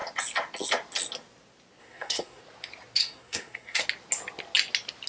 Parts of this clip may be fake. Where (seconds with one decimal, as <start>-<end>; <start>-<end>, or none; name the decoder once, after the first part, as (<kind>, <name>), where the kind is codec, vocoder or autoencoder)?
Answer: 1.8-2.4 (codec, SNAC); 3.0-3.8

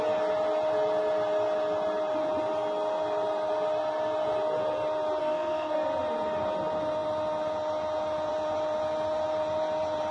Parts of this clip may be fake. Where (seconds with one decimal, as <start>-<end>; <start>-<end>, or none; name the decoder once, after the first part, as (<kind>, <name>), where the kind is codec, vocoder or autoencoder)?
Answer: 5.2-5.7 (codec, SNAC)

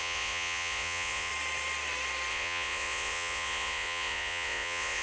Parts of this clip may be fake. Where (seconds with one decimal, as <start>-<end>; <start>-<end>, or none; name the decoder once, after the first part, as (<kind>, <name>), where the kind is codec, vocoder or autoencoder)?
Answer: 0.0-1.3 (vocoder, Vocos); 2.3-5.0

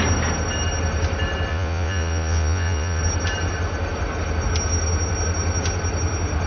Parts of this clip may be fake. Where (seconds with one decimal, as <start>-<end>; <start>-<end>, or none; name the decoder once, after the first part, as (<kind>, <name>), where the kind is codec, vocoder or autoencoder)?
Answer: 1.5-3.0 (vocoder, Vocos)

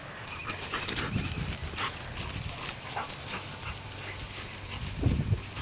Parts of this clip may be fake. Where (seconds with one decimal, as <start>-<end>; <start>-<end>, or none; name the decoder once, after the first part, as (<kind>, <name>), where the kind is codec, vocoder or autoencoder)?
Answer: none

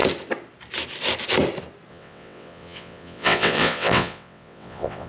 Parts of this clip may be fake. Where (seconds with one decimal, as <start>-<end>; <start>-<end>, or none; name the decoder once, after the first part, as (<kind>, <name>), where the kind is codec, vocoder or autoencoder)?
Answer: 1.9-5.1 (vocoder, WaveNeXt)